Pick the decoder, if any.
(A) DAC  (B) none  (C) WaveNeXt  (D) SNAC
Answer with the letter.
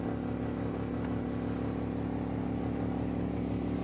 B